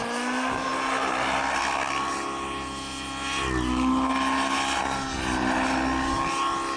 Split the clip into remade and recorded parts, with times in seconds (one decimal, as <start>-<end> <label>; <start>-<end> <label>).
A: 0.0-6.8 recorded